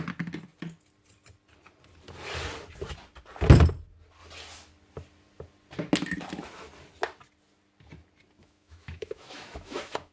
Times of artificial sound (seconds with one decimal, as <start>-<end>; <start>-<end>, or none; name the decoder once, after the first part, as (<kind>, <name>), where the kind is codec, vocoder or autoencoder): 8.4-10.1 (autoencoder, DAC-VAE)